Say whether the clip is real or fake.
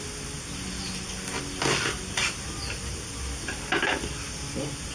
real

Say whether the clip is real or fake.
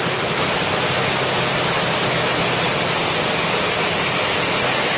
real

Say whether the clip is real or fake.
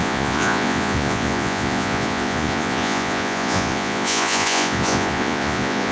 fake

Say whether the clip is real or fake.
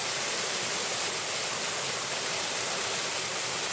real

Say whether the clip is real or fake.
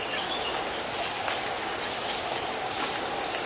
real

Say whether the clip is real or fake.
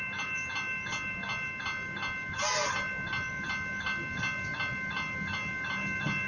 real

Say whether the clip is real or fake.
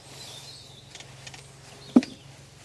real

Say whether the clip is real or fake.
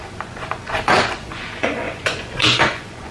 fake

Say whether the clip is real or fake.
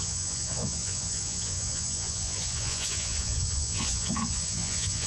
fake